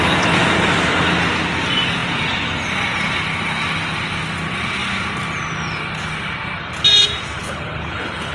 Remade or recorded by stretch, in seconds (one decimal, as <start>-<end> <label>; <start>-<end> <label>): 0.0-7.4 recorded; 7.4-8.3 remade